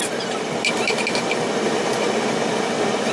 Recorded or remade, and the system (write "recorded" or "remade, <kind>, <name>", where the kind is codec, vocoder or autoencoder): recorded